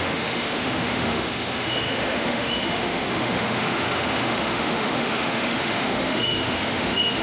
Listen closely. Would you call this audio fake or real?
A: fake